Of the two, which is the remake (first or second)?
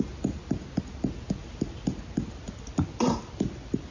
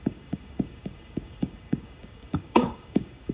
second